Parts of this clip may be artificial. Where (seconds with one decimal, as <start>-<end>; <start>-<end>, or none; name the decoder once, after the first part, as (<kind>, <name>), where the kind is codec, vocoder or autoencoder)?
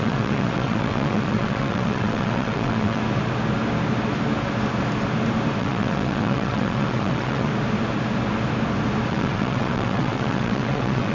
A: 0.0-3.0 (vocoder, WaveNeXt); 5.6-7.5; 9.1-11.1